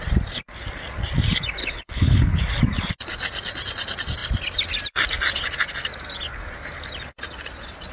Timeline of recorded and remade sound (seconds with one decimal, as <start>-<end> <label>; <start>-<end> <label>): 0.0-1.6 recorded; 1.6-2.4 remade; 2.4-7.9 recorded